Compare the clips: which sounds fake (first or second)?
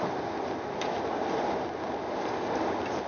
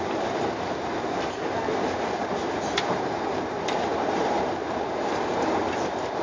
second